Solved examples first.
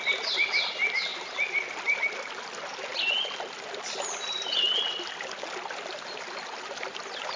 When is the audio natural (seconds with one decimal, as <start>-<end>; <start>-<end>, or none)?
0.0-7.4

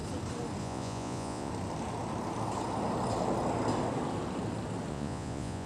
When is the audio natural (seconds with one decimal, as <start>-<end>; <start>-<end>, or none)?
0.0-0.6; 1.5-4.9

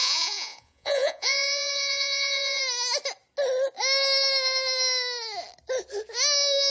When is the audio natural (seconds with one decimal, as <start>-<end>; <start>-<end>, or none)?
2.6-6.7